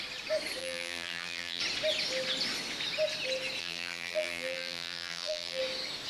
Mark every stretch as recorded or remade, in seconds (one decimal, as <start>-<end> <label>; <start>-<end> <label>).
0.0-0.6 recorded; 0.6-1.6 remade; 1.6-3.6 recorded; 3.6-5.6 remade; 5.6-6.1 recorded